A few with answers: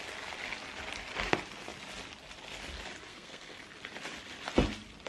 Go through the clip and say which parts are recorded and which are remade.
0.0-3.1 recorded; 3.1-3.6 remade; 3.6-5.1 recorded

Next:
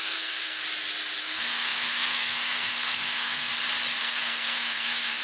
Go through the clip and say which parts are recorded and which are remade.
0.0-0.6 remade; 0.6-1.2 recorded; 1.2-3.5 remade; 3.5-4.0 recorded; 4.0-5.2 remade

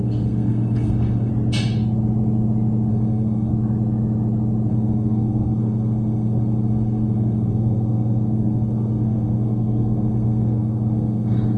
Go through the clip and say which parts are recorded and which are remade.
0.0-1.3 remade; 1.3-2.9 recorded; 2.9-3.5 remade; 3.5-4.7 recorded; 4.7-11.6 remade

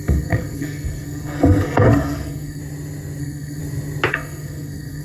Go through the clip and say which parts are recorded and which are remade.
0.0-2.6 remade; 2.6-3.2 recorded; 3.2-3.6 remade; 3.6-4.1 recorded; 4.1-5.0 remade

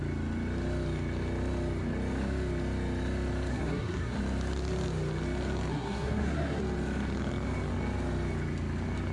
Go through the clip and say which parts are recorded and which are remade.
0.0-3.5 recorded; 3.5-4.2 remade; 4.2-5.7 recorded; 5.7-6.6 remade; 6.6-9.1 recorded

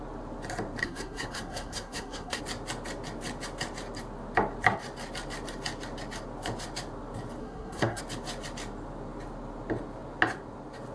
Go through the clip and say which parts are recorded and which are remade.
0.0-0.8 recorded; 0.8-2.4 remade; 2.4-7.4 recorded; 7.4-8.0 remade; 8.0-10.9 recorded